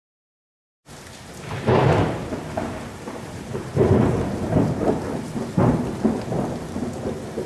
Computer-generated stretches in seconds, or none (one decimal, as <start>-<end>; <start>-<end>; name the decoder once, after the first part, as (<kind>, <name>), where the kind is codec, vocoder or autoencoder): 1.8-5.7 (vocoder, BigVGAN v2)